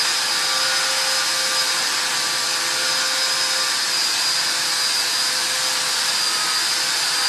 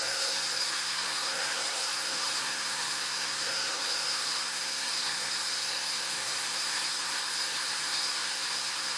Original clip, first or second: first